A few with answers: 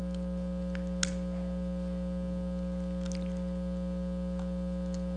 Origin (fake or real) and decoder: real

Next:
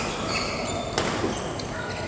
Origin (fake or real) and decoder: real